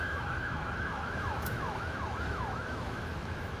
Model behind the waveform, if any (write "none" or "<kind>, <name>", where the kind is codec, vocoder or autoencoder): autoencoder, DAC-VAE